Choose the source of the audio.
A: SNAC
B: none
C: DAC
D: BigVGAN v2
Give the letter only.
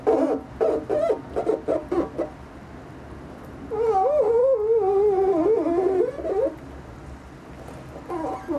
B